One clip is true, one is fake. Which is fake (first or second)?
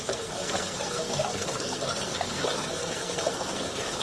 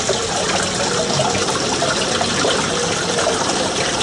first